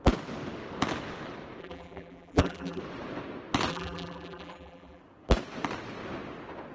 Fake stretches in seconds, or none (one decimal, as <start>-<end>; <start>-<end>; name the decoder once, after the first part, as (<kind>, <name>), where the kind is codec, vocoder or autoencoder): 1.6-2.8 (vocoder, BigVGAN v2); 3.7-5.0